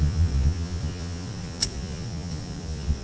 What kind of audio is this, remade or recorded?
remade